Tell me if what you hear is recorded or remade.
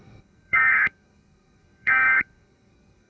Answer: remade